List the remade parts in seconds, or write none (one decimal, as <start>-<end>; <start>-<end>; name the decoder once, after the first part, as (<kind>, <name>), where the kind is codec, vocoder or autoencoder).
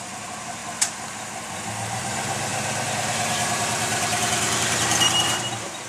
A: 0.0-0.6 (vocoder, BigVGAN v2); 1.7-5.9